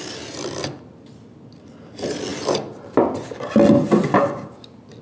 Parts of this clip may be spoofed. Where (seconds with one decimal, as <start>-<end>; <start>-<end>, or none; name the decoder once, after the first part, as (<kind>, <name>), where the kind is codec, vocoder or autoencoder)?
none